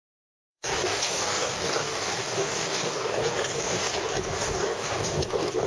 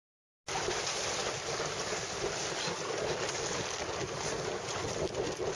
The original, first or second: second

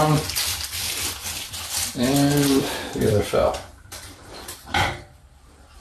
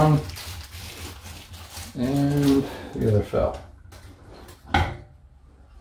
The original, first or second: second